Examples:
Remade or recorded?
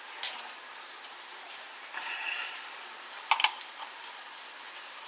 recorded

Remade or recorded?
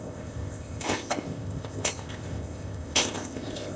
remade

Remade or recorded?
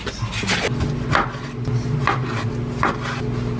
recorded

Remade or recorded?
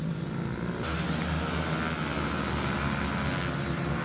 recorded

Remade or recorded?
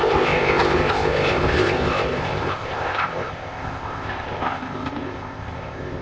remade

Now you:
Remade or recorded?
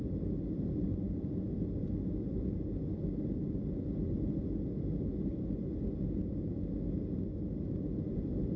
recorded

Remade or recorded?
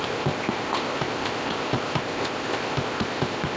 remade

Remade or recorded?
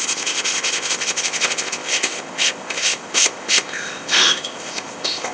remade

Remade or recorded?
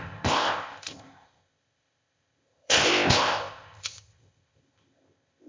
remade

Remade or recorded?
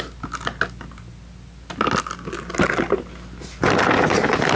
recorded